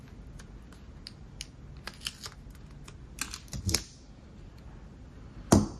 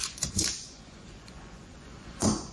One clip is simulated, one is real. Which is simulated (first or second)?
second